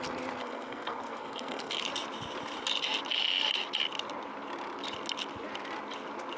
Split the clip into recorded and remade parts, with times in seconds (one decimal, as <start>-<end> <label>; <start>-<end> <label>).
0.0-0.4 recorded; 0.4-1.8 remade; 1.8-6.4 recorded